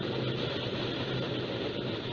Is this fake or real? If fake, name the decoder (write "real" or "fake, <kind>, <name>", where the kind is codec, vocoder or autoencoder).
real